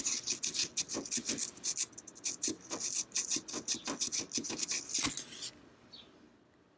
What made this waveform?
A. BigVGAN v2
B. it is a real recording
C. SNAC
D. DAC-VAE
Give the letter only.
B